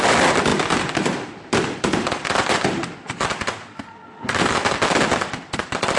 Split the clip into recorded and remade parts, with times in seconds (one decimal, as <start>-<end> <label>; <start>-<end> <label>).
0.0-4.6 remade; 4.6-5.2 recorded; 5.2-6.0 remade